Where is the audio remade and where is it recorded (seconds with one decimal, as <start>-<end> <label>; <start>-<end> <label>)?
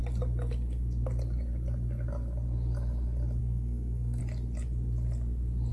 0.0-3.4 recorded; 3.4-4.2 remade; 4.2-5.7 recorded